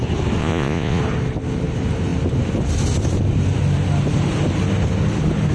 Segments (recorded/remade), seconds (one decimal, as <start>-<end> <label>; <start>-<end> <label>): 0.0-0.4 recorded; 0.4-1.0 remade; 1.0-5.5 recorded